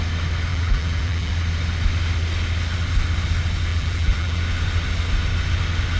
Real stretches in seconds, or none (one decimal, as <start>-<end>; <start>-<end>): 0.0-0.5; 1.3-3.7; 4.4-6.0